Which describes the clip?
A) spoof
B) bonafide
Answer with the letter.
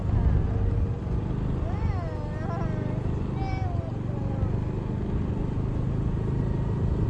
B